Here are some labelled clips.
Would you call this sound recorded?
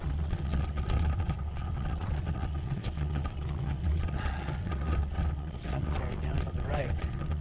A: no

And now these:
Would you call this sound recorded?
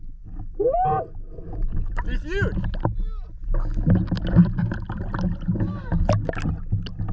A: yes